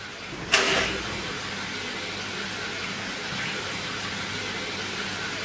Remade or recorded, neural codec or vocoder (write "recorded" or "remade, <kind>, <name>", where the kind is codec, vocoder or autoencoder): recorded